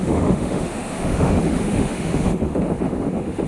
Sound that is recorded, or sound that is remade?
remade